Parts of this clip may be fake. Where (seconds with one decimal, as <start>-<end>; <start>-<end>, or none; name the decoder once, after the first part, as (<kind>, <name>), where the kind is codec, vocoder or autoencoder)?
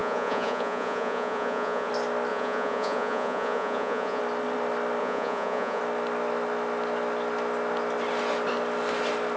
0.0-1.9 (vocoder, Vocos); 2.3-4.2; 5.0-5.8